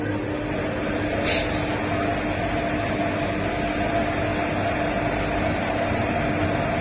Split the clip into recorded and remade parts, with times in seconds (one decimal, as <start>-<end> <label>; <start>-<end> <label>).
0.0-6.8 recorded